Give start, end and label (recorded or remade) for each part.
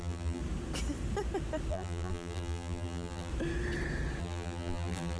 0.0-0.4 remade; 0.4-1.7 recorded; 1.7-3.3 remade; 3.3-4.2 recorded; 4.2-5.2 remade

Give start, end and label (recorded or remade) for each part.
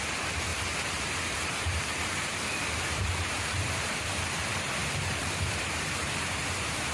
0.0-0.5 remade; 0.5-1.0 recorded; 1.0-6.9 remade